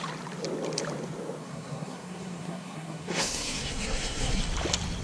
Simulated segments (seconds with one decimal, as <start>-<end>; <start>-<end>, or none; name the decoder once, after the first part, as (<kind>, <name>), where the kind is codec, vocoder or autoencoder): 1.4-4.4 (codec, SNAC)